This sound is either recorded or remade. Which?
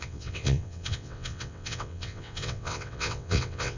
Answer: remade